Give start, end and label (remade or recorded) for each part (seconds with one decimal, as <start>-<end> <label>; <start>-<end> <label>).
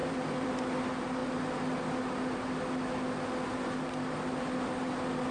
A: 0.0-0.5 remade; 0.5-5.3 recorded